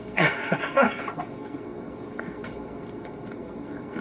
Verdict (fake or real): fake